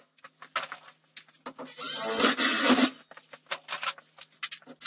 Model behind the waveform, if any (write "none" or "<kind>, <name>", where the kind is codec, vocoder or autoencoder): none